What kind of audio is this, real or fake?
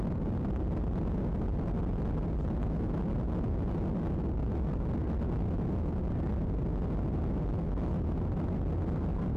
real